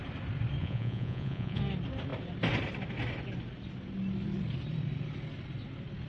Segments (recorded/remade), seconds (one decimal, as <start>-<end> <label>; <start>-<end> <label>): 0.0-0.6 recorded; 0.6-1.6 remade; 1.6-6.1 recorded